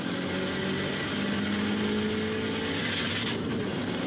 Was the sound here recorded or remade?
recorded